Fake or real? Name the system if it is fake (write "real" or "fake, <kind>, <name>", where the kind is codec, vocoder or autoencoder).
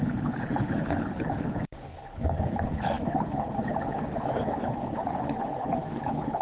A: fake, codec, HILCodec